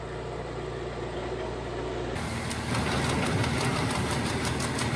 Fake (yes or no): no